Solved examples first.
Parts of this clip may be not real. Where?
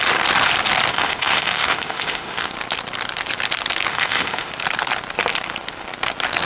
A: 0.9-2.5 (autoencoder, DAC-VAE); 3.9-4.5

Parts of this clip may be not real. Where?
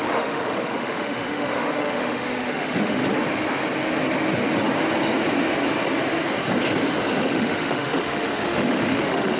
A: 0.0-3.0 (autoencoder, DAC-VAE); 7.2-9.4